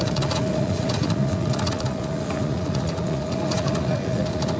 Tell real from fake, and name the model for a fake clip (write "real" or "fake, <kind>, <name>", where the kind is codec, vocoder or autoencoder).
fake, vocoder, Vocos